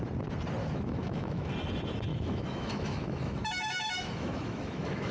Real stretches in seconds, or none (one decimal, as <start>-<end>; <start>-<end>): 0.0-0.6; 1.5-2.1